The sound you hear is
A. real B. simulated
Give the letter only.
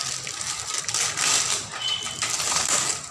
A